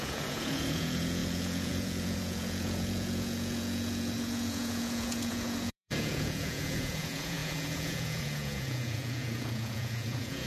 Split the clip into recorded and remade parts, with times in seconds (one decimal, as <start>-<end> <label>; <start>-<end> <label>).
0.0-10.5 remade

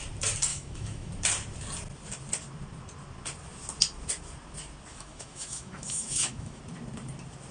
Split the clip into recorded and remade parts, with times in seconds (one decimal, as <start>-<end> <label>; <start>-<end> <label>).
0.0-0.5 recorded; 0.5-1.1 remade; 1.1-4.9 recorded; 4.9-6.6 remade; 6.6-7.5 recorded

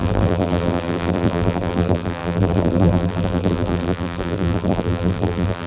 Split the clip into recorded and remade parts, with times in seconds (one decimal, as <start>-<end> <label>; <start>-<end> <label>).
0.0-5.7 remade

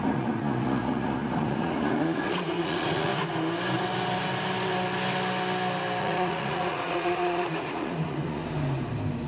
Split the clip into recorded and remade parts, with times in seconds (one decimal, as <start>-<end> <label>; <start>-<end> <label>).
0.0-3.1 remade; 3.1-6.0 recorded; 6.0-8.4 remade; 8.4-9.3 recorded

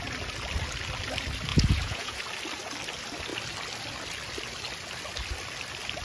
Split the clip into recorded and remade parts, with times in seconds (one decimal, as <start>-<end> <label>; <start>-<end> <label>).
0.0-1.5 recorded; 1.5-2.2 remade; 2.2-6.0 recorded

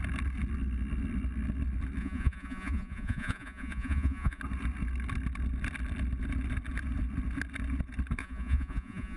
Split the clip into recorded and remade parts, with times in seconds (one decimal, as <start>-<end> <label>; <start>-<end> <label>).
0.0-2.0 recorded; 2.0-4.4 remade; 4.4-8.2 recorded; 8.2-9.2 remade

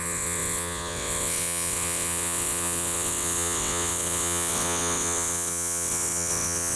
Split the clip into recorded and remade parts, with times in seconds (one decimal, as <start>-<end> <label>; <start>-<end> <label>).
0.0-6.8 remade

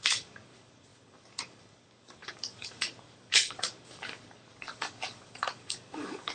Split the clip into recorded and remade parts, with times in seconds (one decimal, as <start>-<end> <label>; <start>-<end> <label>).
0.0-6.3 remade